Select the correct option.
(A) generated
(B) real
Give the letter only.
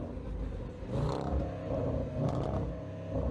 B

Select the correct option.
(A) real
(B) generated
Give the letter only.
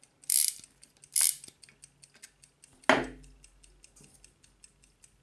A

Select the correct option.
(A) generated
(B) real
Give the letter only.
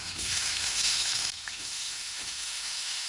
A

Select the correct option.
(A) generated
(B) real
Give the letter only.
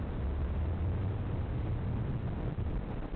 B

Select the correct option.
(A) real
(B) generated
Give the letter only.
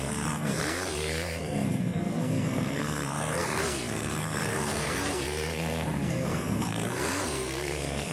B